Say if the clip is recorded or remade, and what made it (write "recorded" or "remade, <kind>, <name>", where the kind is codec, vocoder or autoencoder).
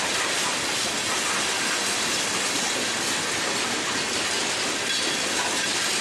recorded